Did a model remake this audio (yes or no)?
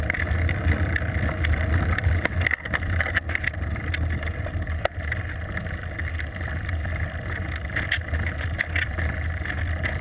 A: no